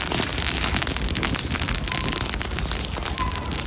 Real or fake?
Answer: real